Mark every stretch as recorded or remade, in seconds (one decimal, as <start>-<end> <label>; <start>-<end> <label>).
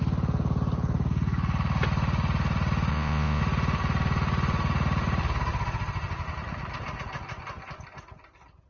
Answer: 0.0-2.9 recorded; 2.9-3.4 remade; 3.4-8.7 recorded